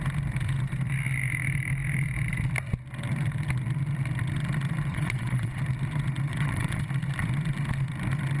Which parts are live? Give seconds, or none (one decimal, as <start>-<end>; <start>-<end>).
0.0-4.9; 5.6-6.3; 6.9-8.4